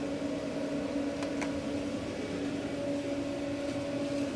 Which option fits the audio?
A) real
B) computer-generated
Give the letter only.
A